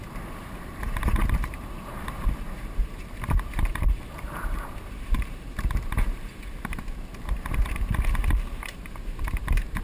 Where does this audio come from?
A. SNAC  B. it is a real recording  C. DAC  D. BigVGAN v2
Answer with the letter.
D